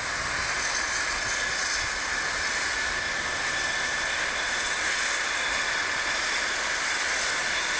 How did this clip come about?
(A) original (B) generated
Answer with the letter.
A